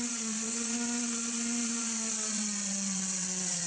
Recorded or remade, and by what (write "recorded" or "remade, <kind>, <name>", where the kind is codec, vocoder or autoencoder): remade, vocoder, WaveNeXt